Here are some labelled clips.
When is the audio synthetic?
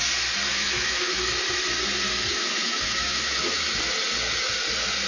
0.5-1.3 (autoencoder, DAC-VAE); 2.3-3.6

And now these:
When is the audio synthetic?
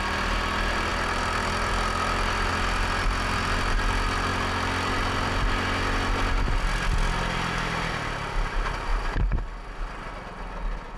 none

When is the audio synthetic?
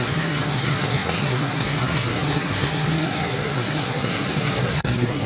0.0-5.3 (codec, SNAC)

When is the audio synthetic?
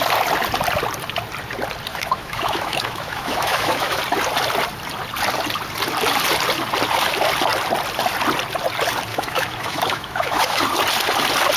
1.9-4.0 (autoencoder, DAC-VAE); 9.1-10.6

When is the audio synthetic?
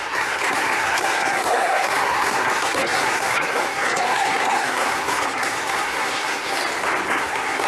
0.0-6.6 (codec, SNAC); 7.1-7.7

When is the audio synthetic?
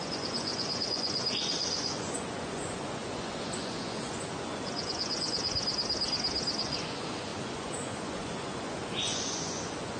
0.0-5.4 (vocoder, Vocos); 6.6-10.0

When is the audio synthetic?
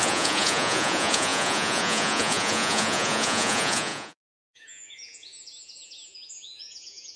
0.0-7.2 (vocoder, Vocos)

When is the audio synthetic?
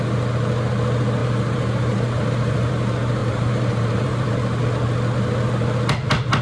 1.2-2.7 (vocoder, BigVGAN v2); 3.2-4.3